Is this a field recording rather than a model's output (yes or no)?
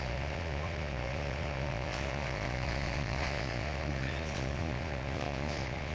no